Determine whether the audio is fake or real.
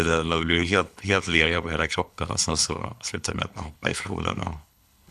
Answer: fake